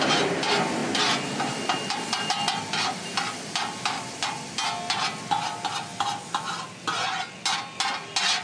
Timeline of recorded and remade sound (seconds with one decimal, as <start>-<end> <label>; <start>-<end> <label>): 0.0-8.4 recorded